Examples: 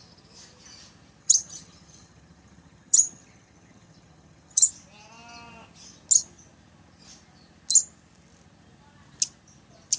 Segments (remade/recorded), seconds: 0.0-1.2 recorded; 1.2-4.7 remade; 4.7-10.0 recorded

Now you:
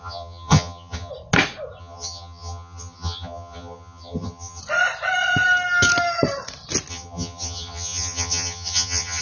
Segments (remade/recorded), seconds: 0.0-1.1 remade; 1.1-1.8 recorded; 1.8-4.6 remade; 4.6-6.9 recorded; 6.9-9.2 remade

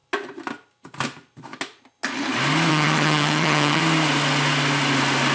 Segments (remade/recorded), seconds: 0.0-2.7 recorded; 2.7-3.8 remade; 3.8-5.3 recorded

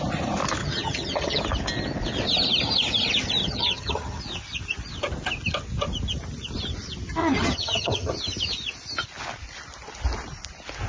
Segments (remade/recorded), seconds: 0.0-0.6 recorded; 0.6-1.4 remade; 1.4-3.4 recorded; 3.4-4.2 remade; 4.2-7.2 recorded; 7.2-8.1 remade; 8.1-10.9 recorded

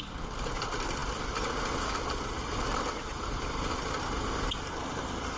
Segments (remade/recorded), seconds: 0.0-5.4 recorded

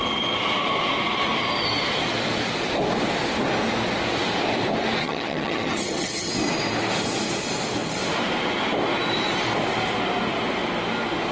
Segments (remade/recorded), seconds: 0.0-5.0 recorded; 5.0-6.3 remade; 6.3-11.3 recorded